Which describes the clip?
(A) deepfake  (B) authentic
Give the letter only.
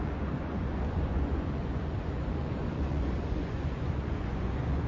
A